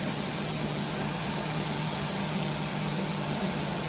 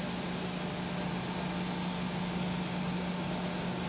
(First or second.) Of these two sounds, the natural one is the second